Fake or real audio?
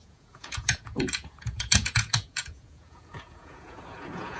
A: fake